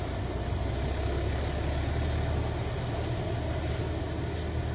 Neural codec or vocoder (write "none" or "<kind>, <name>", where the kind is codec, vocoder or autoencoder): none